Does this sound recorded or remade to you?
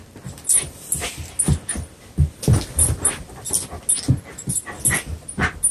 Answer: recorded